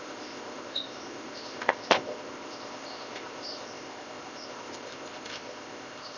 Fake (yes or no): yes